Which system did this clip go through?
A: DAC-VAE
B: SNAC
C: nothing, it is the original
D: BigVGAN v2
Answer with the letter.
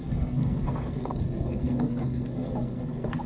B